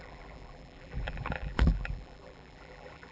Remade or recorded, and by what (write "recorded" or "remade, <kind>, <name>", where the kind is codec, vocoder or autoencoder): remade, vocoder, BigVGAN v2